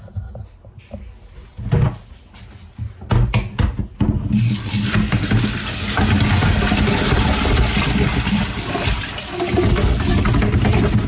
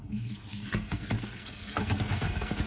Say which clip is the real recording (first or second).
first